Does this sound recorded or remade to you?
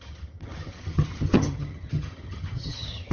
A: remade